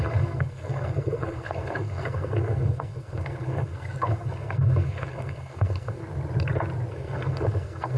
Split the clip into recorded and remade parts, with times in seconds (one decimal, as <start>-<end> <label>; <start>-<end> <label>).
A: 0.0-6.0 remade; 6.0-6.9 recorded; 6.9-8.0 remade